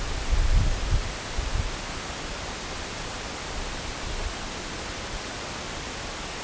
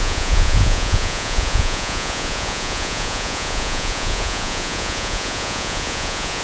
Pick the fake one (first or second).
second